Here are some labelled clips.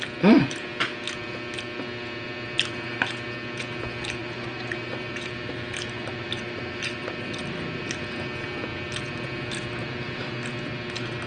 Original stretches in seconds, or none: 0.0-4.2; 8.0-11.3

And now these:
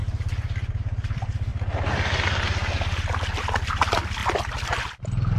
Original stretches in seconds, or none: 0.0-0.8; 1.5-3.4; 4.2-5.4

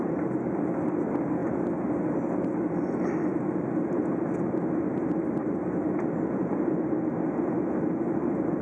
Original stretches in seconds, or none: 0.0-8.6

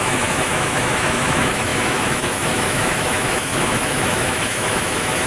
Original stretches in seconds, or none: none

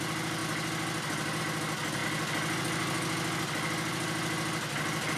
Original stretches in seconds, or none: 0.0-5.2

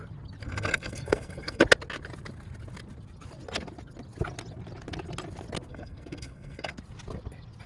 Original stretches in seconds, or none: 0.0-0.4; 1.6-5.7; 6.7-7.7

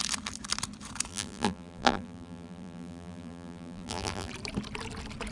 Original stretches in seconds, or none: 0.0-1.1; 4.3-5.3